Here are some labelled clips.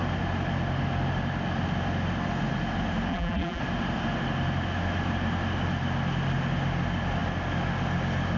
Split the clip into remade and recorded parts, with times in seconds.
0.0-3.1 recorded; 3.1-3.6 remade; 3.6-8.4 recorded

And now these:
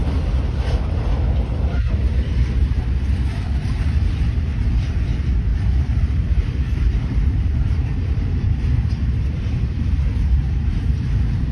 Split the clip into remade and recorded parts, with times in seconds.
0.0-2.6 recorded; 2.6-11.5 remade

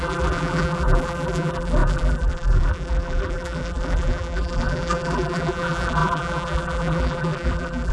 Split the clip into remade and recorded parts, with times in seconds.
0.0-7.9 remade

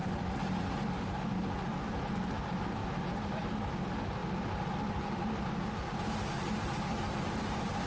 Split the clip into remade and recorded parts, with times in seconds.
0.0-0.6 remade; 0.6-2.8 recorded; 2.8-3.4 remade; 3.4-4.2 recorded; 4.2-5.5 remade; 5.5-7.9 recorded

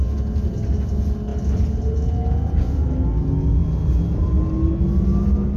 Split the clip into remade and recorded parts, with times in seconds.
0.0-5.6 recorded

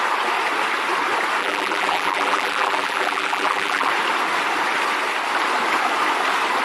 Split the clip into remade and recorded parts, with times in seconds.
0.0-1.4 recorded; 1.4-3.9 remade; 3.9-6.6 recorded

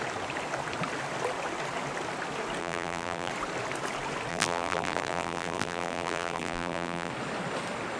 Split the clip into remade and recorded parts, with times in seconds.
0.0-2.6 recorded; 2.6-3.3 remade; 3.3-4.3 recorded; 4.3-7.1 remade; 7.1-8.0 recorded